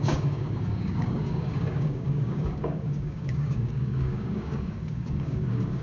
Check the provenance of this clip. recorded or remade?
remade